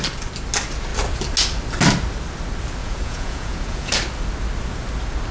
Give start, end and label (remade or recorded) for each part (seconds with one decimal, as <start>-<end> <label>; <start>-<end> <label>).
0.0-2.8 recorded; 2.8-3.9 remade; 3.9-5.3 recorded